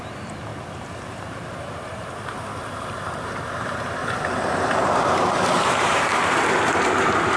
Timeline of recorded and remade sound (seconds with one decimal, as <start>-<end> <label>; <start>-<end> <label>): 0.0-7.4 remade